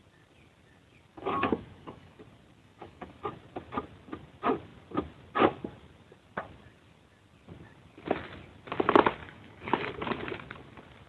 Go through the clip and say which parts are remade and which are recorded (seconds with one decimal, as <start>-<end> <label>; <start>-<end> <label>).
0.0-1.1 recorded; 1.1-2.2 remade; 2.2-2.6 recorded; 2.6-3.3 remade; 3.3-9.2 recorded; 9.2-9.9 remade; 9.9-11.1 recorded